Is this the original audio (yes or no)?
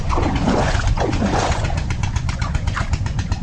no